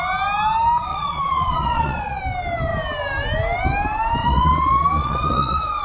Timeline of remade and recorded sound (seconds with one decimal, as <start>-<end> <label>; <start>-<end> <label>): 0.0-0.9 recorded; 0.9-2.2 remade; 2.2-4.2 recorded; 4.2-5.8 remade